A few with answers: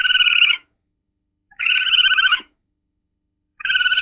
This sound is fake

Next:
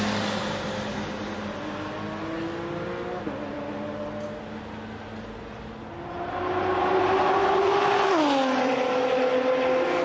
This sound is real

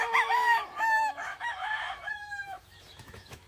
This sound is fake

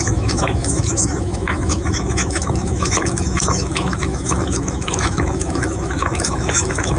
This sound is fake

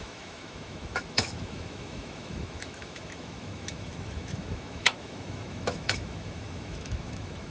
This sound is fake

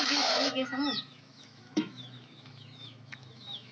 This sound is fake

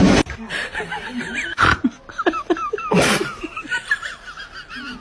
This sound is real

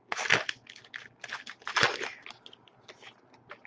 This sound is real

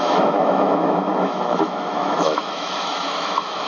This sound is fake